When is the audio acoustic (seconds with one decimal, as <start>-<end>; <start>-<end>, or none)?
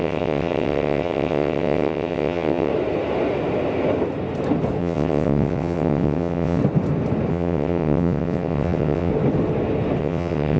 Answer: 2.7-4.8; 6.6-7.3; 9.1-10.0